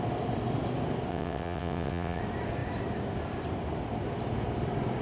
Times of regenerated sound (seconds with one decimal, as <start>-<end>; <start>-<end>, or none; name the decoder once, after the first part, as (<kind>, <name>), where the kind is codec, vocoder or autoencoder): 1.1-2.2 (vocoder, WaveNeXt)